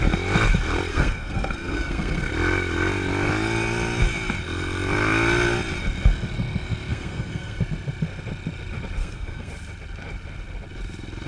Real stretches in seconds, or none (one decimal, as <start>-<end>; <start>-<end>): 0.0-0.9; 2.3-6.9; 7.6-9.0; 9.5-11.3